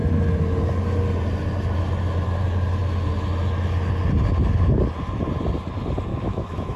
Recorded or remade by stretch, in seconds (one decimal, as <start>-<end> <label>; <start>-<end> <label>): 0.0-6.1 recorded; 6.1-6.8 remade